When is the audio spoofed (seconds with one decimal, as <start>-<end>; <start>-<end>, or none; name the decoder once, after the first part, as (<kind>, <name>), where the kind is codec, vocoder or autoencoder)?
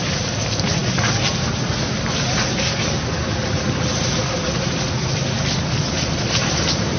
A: none